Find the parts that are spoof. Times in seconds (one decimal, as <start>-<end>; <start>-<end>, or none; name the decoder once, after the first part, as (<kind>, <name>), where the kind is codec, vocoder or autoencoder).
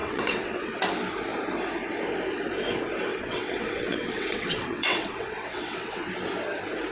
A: 0.0-0.8 (vocoder, WaveNeXt); 3.1-6.1